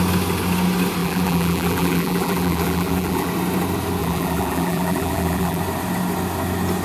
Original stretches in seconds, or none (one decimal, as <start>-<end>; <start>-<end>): 0.0-1.0; 3.3-4.0; 5.6-6.8